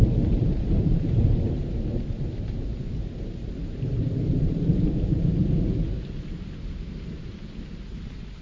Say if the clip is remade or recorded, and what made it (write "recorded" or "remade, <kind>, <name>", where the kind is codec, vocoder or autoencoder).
remade, vocoder, BigVGAN v2